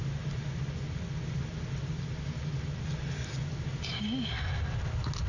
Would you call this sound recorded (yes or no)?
yes